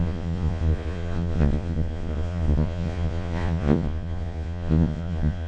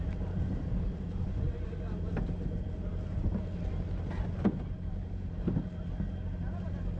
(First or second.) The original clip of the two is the second